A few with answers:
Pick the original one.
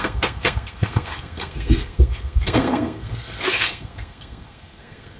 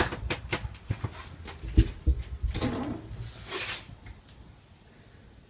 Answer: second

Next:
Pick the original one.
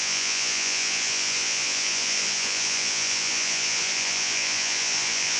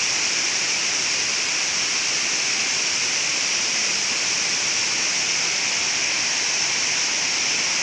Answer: second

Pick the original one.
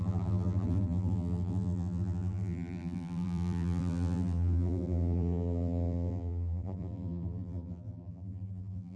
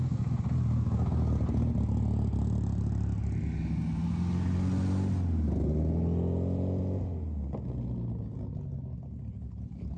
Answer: second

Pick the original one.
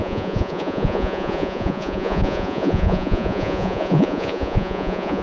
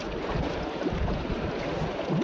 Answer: second